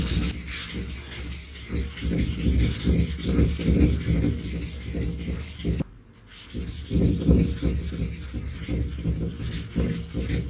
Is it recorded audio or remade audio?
recorded